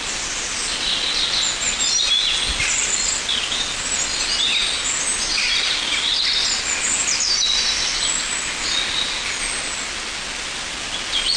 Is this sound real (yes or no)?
yes